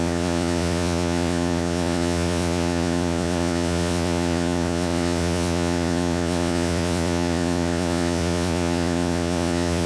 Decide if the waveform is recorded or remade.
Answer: remade